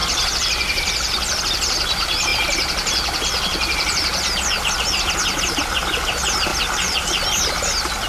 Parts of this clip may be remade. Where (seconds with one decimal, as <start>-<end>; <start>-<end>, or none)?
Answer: 0.0-1.4; 6.5-7.5